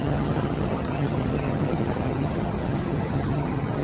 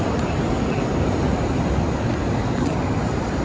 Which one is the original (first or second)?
second